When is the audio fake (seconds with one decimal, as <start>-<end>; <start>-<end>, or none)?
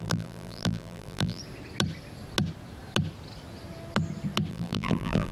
0.0-1.4; 4.5-5.3